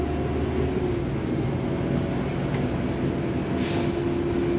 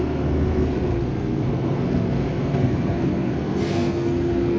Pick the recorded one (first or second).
first